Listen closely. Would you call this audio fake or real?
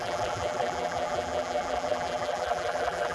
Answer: fake